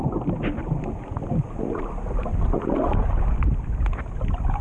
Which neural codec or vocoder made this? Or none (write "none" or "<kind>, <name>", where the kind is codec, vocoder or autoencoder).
none